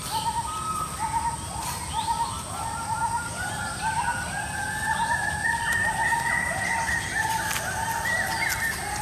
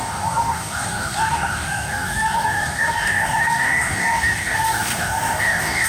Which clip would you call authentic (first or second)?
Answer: first